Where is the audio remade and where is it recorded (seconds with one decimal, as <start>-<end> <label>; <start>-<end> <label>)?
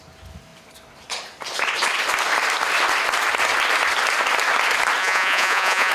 0.0-5.0 recorded; 5.0-5.9 remade